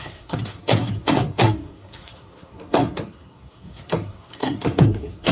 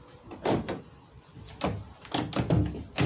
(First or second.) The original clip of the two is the second